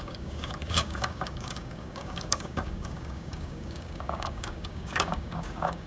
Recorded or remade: remade